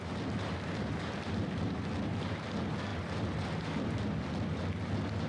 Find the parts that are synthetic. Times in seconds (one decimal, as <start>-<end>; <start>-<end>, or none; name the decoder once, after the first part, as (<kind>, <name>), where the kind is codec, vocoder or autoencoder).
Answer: none